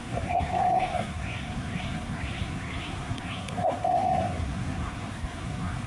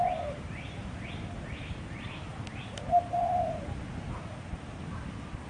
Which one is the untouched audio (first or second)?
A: second